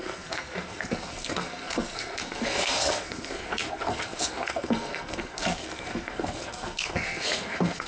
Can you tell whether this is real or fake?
fake